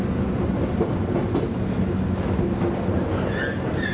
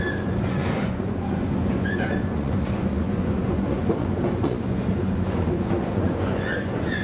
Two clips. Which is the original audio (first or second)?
first